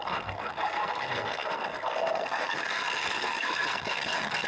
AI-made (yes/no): yes